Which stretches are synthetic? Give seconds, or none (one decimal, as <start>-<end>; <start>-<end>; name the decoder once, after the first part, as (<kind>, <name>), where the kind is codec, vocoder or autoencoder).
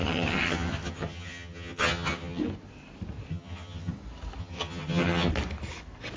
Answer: 0.0-2.4 (vocoder, HiFi-GAN); 3.3-3.9; 4.4-5.3